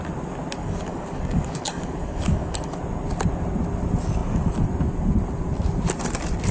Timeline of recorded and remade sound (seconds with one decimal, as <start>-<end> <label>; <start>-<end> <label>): 0.0-0.6 recorded; 0.6-2.8 remade; 2.8-6.5 recorded